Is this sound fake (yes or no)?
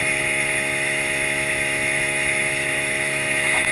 yes